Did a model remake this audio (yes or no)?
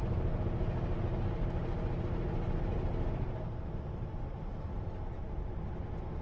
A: no